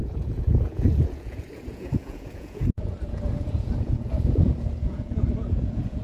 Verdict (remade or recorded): remade